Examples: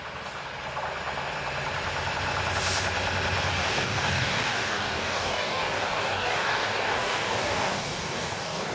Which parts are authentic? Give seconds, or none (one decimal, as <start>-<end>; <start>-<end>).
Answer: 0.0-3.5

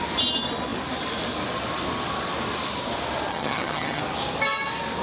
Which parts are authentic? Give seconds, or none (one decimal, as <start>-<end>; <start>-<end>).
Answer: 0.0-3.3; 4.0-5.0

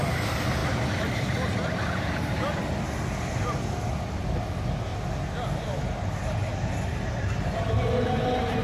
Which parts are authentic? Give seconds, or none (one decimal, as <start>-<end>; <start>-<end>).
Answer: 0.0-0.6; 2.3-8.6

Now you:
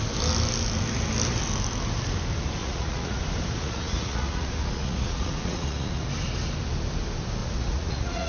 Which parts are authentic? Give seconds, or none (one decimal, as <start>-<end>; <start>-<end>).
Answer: 0.0-2.6; 3.2-3.6; 6.1-7.4

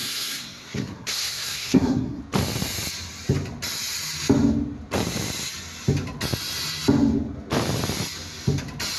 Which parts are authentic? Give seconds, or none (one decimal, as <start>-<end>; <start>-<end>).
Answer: 2.2-9.0

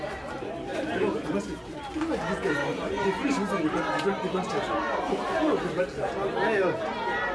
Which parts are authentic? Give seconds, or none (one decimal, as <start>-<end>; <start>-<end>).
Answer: 0.0-7.3

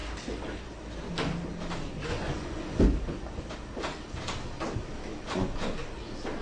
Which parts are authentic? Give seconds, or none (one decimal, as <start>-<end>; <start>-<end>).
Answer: 0.0-2.1; 2.8-6.4